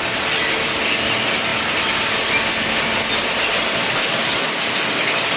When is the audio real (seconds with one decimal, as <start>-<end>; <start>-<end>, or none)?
0.0-5.4